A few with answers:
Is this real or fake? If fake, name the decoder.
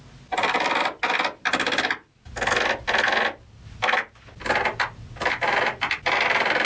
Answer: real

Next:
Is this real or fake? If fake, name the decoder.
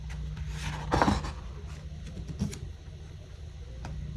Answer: real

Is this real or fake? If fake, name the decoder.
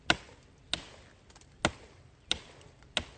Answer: real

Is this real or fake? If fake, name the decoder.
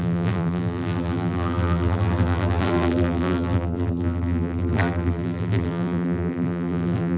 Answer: fake, vocoder, BigVGAN v2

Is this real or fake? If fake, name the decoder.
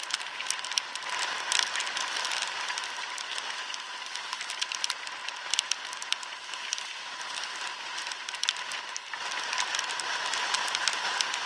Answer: real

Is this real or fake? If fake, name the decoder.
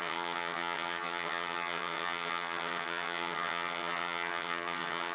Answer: fake, vocoder, HiFi-GAN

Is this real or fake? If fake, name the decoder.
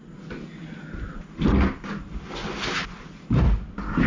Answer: real